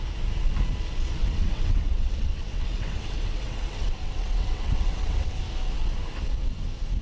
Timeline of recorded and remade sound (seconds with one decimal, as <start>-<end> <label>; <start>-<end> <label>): 0.0-1.2 recorded; 1.2-5.4 remade; 5.4-7.0 recorded